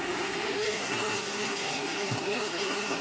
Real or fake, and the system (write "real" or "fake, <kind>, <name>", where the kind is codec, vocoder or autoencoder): fake, codec, SNAC